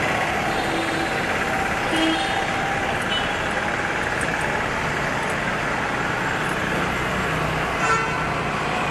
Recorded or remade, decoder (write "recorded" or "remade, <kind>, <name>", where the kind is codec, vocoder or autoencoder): recorded